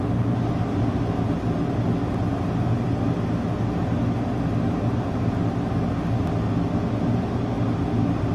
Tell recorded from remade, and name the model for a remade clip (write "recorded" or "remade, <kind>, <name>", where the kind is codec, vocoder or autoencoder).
recorded